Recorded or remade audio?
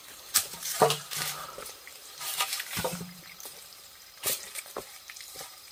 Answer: remade